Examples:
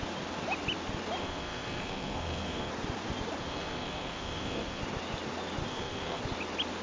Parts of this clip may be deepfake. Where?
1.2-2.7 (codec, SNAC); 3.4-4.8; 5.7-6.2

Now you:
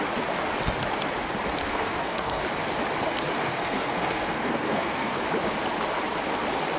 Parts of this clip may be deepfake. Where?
1.7-2.4 (codec, SNAC); 3.4-5.2

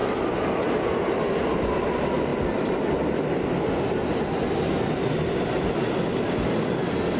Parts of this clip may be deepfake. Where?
none

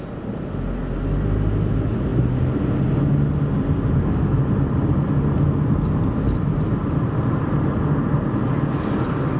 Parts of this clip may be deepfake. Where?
none

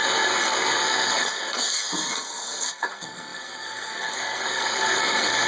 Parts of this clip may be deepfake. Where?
0.0-5.5 (codec, SNAC)